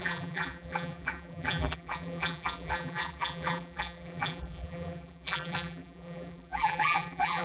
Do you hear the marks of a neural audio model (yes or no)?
yes